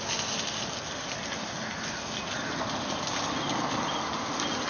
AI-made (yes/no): no